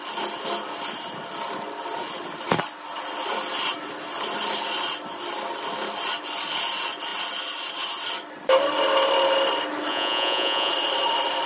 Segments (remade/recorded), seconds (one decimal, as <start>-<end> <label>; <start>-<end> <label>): 0.0-9.9 recorded; 9.9-10.7 remade; 10.7-11.5 recorded